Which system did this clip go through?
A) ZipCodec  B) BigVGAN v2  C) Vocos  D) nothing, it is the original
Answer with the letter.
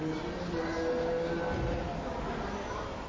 D